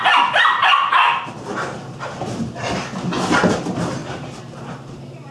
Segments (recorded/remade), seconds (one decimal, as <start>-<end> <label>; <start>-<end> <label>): 0.0-4.0 recorded; 4.0-5.3 remade